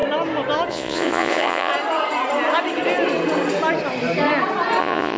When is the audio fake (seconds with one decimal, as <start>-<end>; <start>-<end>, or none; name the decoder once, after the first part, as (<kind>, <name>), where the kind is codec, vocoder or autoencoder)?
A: 0.7-1.7 (vocoder, Vocos); 4.8-5.2